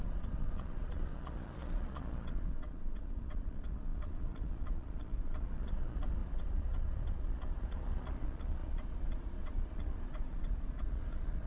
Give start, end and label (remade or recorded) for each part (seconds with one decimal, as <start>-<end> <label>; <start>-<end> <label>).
0.0-11.5 remade